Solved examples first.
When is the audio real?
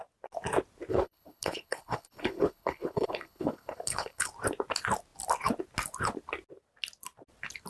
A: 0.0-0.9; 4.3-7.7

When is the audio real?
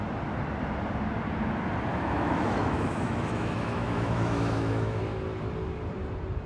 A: 0.0-1.9; 5.0-6.5